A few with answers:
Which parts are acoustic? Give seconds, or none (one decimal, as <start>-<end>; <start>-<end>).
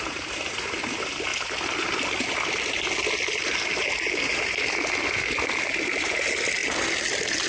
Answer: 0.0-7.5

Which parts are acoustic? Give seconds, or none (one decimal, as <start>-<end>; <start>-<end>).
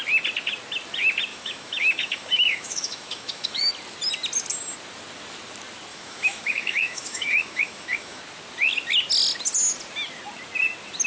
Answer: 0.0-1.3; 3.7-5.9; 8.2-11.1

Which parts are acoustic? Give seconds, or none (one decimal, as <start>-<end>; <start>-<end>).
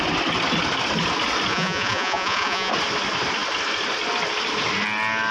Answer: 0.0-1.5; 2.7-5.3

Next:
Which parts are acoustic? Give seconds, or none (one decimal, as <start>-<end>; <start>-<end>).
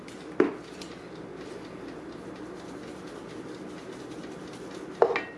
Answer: 0.0-5.4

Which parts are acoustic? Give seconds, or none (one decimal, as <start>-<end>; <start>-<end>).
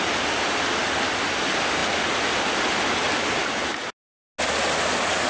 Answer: 0.0-5.3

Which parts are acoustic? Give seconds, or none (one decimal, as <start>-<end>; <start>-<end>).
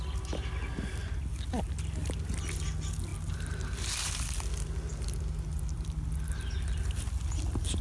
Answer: 0.0-7.8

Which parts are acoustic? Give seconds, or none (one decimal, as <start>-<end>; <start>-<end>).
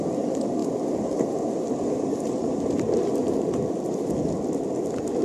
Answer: 0.0-5.2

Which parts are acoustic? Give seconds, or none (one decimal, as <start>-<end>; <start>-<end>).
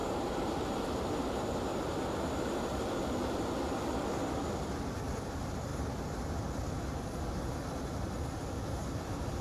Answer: 0.5-5.7; 6.5-9.4